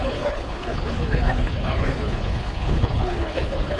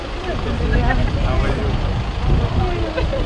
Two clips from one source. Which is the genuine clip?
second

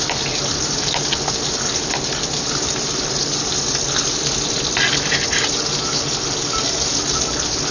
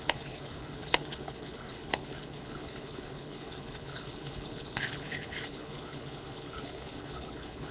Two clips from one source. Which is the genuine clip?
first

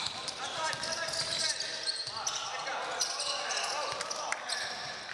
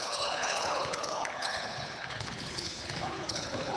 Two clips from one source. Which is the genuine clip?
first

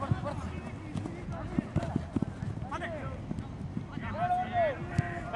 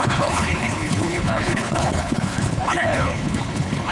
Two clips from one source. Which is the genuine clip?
first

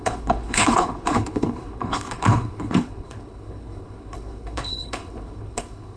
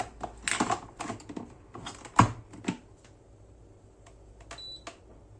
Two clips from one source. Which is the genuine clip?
second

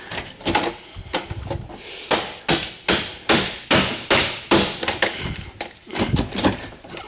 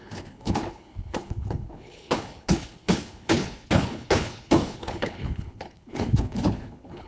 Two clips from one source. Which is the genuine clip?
first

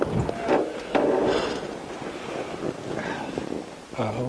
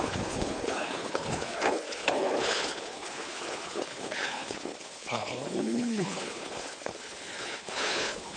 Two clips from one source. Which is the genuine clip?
first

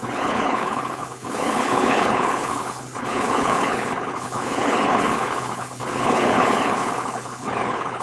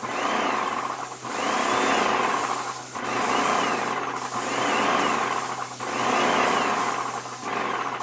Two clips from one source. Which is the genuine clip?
second